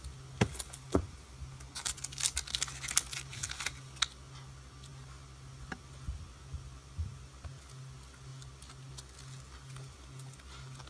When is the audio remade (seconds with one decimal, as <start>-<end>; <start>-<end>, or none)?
none